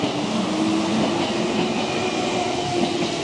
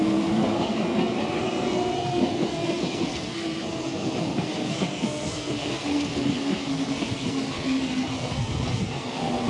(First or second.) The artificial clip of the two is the second